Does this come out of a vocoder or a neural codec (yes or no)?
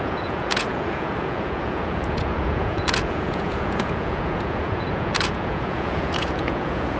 yes